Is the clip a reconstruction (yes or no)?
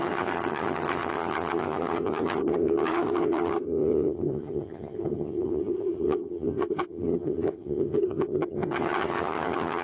yes